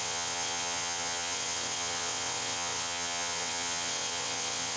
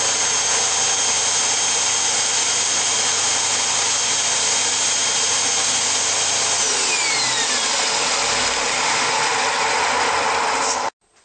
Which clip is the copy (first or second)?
first